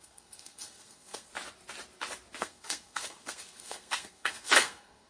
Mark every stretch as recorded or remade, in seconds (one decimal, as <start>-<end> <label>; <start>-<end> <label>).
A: 0.0-1.3 remade; 1.3-2.4 recorded; 2.4-5.1 remade